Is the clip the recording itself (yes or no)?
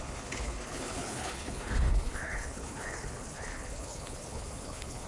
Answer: no